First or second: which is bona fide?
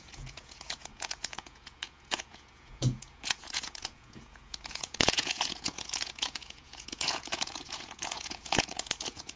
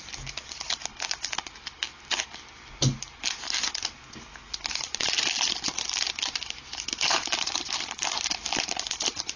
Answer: second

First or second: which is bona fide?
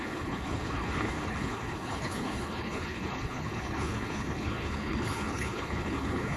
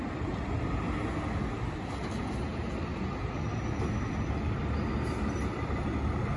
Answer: second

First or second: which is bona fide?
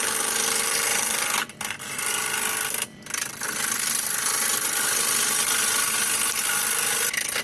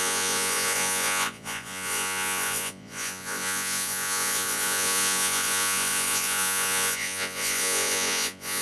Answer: first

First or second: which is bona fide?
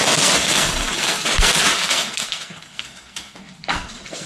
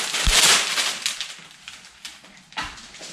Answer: second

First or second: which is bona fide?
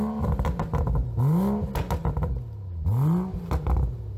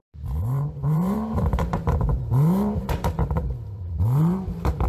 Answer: first